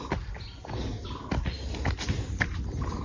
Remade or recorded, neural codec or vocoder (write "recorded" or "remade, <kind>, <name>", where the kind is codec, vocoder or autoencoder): recorded